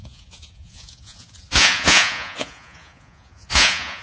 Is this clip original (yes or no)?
no